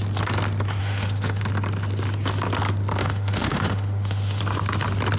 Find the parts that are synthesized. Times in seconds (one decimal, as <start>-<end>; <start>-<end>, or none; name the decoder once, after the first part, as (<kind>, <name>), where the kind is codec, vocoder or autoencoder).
0.8-1.4 (autoencoder, DAC-VAE); 3.0-4.4